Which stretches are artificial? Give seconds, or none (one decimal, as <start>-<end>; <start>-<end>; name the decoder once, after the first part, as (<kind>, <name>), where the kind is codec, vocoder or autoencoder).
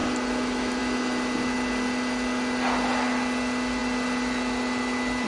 none